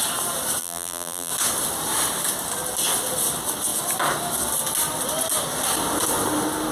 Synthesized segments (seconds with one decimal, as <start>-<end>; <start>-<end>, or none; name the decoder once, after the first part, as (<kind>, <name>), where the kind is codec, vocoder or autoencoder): 0.6-1.3 (vocoder, BigVGAN v2)